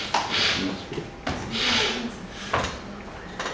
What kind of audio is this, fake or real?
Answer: real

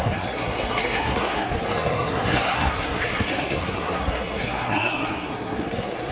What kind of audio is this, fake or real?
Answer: fake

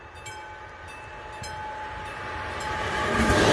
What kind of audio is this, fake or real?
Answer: real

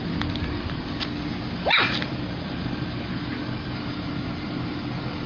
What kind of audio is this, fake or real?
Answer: real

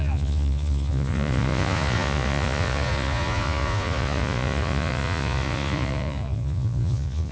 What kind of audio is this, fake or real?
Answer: fake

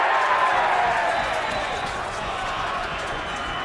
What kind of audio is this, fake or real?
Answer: fake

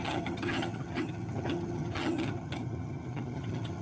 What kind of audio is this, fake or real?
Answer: fake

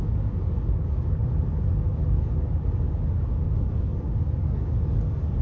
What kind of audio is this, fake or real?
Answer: fake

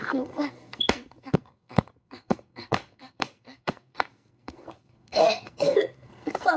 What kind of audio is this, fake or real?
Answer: fake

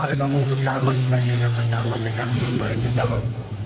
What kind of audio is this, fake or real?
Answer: fake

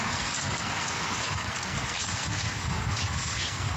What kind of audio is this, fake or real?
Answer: fake